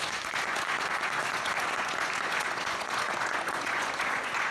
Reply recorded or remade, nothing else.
remade